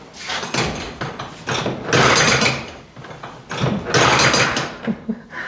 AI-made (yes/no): no